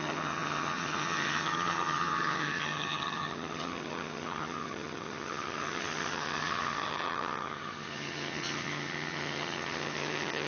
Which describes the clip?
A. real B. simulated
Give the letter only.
B